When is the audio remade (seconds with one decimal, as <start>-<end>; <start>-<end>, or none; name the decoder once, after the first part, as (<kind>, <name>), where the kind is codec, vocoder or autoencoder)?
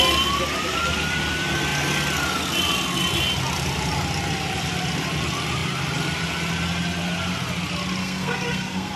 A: 8.0-9.0 (codec, SNAC)